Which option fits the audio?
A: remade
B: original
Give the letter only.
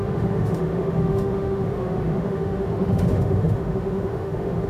A